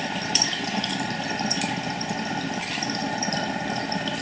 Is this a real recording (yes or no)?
no